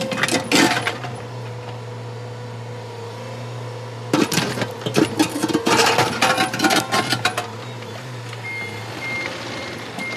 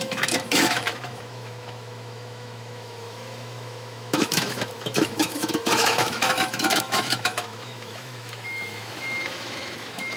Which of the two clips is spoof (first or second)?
second